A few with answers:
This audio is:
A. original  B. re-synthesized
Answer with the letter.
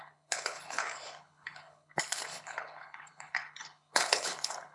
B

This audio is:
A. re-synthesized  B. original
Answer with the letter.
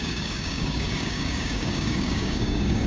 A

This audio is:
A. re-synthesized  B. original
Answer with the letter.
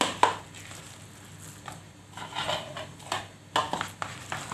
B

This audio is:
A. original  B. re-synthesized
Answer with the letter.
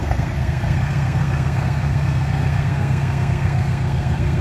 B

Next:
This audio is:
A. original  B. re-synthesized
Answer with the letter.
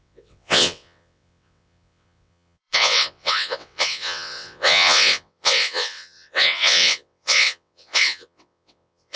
B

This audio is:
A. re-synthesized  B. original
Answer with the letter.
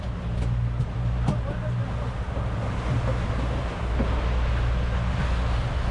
B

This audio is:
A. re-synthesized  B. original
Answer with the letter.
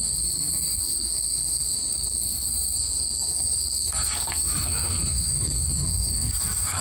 A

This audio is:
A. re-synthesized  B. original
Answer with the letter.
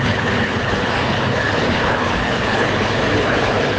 A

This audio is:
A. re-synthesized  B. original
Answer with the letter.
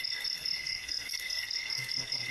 A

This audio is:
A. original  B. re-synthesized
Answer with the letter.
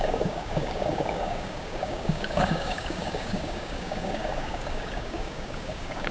B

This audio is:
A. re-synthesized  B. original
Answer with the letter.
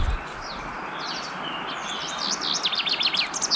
B